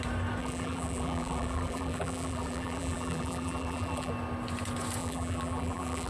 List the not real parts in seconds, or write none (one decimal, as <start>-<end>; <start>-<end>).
0.4-4.1; 5.0-6.1